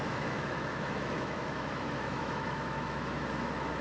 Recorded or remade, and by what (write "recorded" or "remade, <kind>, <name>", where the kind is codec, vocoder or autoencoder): remade, autoencoder, DAC-VAE